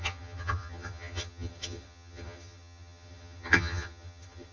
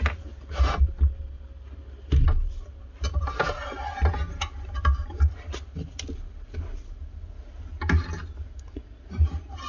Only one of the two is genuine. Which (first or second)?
second